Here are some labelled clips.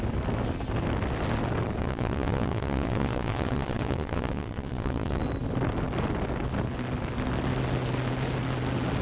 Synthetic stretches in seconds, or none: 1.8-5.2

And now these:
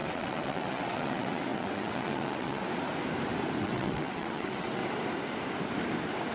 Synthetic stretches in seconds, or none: 0.0-2.6; 3.6-4.8

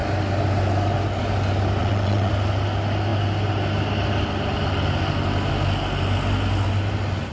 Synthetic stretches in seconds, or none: 1.8-2.3

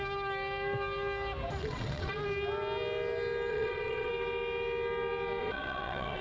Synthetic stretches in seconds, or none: 1.6-2.2; 3.5-4.1; 5.4-6.2

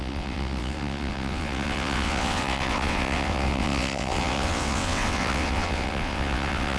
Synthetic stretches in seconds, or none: 0.0-6.8